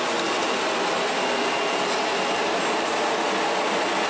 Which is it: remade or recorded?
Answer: recorded